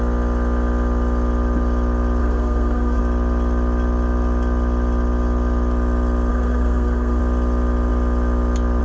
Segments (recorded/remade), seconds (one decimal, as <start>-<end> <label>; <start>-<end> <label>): 0.0-2.2 recorded; 2.2-3.0 remade; 3.0-6.3 recorded; 6.3-7.2 remade; 7.2-8.8 recorded